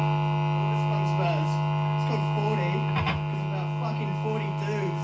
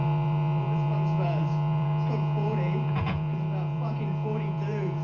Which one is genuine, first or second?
first